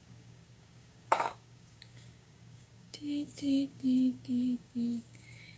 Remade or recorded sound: remade